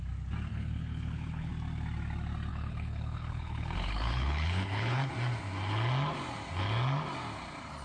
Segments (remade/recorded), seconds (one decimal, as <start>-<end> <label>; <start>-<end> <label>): 0.0-0.5 recorded; 0.5-1.5 remade; 1.5-2.5 recorded; 2.5-5.1 remade; 5.1-7.8 recorded